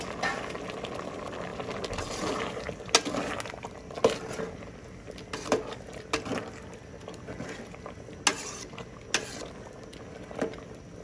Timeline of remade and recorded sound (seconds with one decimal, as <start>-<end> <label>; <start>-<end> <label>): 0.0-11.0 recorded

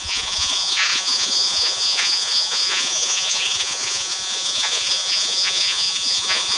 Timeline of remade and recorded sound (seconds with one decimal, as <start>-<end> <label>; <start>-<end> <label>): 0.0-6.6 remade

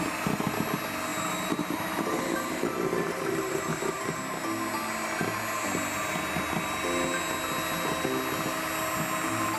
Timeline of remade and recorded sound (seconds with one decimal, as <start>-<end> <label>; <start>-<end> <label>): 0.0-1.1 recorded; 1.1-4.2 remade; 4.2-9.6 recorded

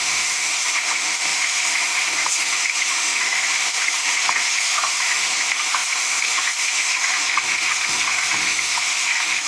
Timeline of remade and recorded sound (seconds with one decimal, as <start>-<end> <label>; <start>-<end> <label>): 0.0-9.5 remade

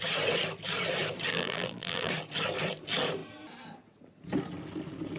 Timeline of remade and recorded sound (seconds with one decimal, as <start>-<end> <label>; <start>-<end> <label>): 0.0-1.3 recorded; 1.3-2.1 remade; 2.1-5.2 recorded